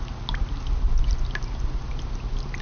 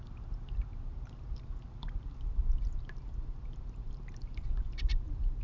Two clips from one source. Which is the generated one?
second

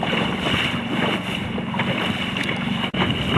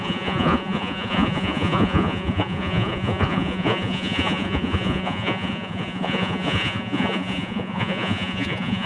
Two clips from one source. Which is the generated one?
second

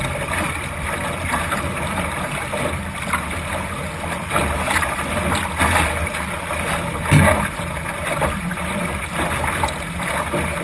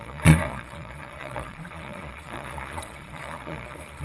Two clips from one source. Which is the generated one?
second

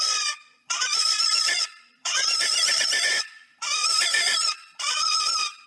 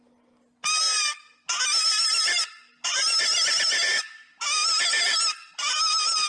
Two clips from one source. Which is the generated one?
first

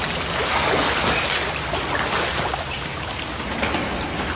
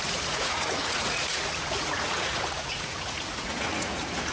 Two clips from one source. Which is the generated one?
second